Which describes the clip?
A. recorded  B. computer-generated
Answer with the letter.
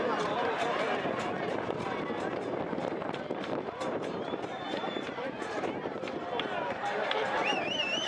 B